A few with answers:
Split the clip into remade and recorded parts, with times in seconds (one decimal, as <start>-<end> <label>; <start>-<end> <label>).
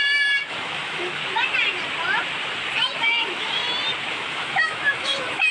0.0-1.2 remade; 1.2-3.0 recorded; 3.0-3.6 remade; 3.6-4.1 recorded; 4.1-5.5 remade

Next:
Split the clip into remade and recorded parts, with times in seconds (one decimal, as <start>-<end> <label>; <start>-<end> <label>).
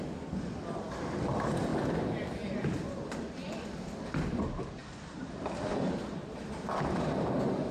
0.0-7.7 recorded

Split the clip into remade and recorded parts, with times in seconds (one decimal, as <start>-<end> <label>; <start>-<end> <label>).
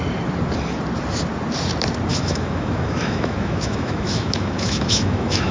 0.0-2.1 recorded; 2.1-5.5 remade